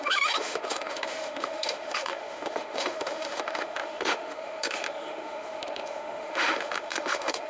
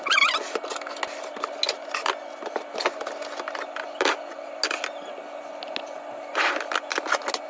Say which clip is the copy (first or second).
first